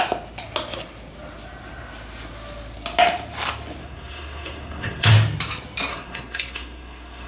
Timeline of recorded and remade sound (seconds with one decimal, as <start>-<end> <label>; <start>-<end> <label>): 0.0-3.8 recorded; 3.8-5.1 remade; 5.1-5.9 recorded; 5.9-7.3 remade